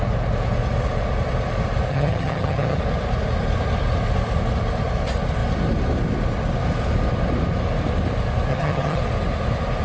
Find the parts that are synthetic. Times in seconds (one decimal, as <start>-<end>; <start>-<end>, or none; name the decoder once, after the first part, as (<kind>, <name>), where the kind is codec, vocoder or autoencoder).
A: 1.9-2.8 (vocoder, HiFi-GAN); 8.5-9.0